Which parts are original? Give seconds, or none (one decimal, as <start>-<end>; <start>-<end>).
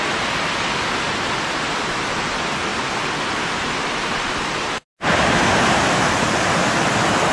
0.0-7.3